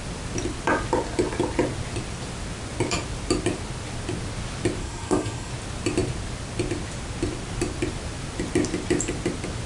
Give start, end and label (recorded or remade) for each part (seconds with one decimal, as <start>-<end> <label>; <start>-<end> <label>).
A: 0.0-4.8 recorded; 4.8-5.5 remade; 5.5-9.7 recorded